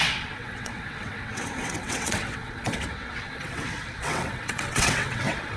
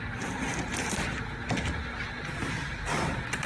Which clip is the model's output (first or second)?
first